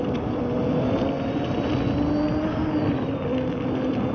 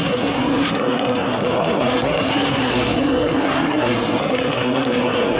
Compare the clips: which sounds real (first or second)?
first